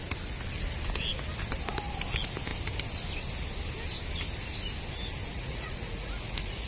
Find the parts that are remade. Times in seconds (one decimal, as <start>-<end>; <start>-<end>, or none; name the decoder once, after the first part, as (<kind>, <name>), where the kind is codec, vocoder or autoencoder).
5.3-6.7 (vocoder, Vocos)